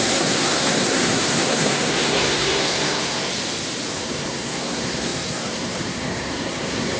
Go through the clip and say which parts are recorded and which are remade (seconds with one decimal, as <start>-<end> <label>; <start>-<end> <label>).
0.0-3.3 remade; 3.3-4.0 recorded; 4.0-7.0 remade